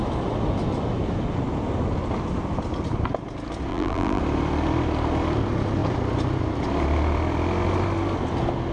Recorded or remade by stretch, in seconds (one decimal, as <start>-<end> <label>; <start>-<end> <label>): 0.0-3.7 recorded; 3.7-4.2 remade; 4.2-8.7 recorded